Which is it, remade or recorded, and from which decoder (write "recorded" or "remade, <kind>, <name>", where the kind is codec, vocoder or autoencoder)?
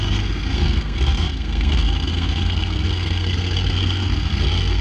remade, codec, SNAC